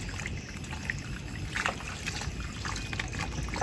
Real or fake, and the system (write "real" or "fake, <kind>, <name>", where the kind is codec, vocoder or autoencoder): real